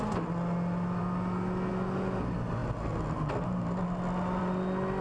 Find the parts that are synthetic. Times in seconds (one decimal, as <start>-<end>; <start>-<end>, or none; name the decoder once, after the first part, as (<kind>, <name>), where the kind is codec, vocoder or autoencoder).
none